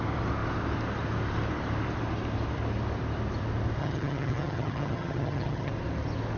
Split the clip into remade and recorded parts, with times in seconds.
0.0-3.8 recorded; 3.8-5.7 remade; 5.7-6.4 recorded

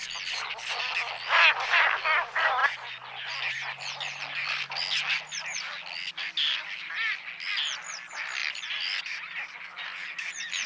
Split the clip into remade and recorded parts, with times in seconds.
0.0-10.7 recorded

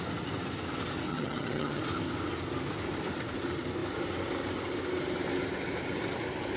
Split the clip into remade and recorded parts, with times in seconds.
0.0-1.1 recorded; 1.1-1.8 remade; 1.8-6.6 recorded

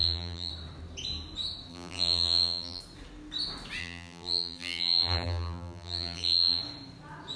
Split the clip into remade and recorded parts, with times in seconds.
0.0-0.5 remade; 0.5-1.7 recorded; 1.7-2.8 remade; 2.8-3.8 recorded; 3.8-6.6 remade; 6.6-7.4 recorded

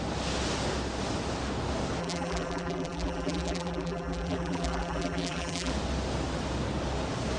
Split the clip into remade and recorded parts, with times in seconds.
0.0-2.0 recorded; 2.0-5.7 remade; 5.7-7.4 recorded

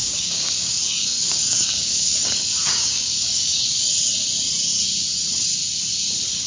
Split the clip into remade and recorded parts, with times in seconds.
0.0-3.9 remade; 3.9-6.5 recorded